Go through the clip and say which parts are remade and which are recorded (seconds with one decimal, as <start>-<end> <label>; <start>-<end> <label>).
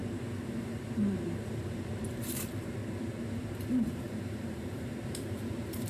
0.0-2.8 remade; 2.8-3.4 recorded; 3.4-5.9 remade